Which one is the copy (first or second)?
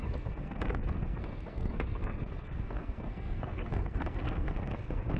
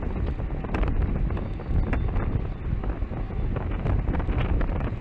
first